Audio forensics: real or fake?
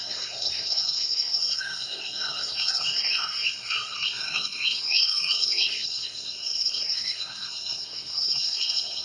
fake